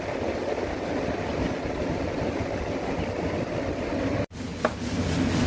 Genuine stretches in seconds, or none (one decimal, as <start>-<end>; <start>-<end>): 0.0-5.5